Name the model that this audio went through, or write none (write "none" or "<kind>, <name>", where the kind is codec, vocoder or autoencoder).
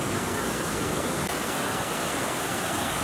codec, SNAC